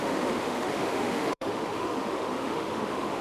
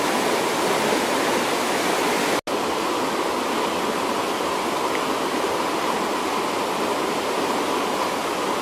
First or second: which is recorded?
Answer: second